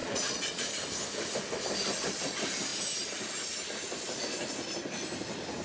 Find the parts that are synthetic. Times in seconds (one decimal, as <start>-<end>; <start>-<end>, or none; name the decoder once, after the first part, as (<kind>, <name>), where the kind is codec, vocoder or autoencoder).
0.0-0.7 (vocoder, Vocos)